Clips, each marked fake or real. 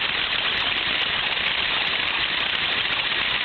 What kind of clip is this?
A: real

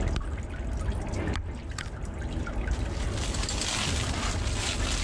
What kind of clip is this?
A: real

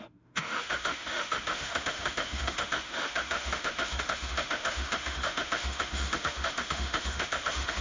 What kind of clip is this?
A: fake